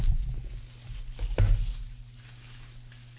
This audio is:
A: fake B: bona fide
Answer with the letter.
B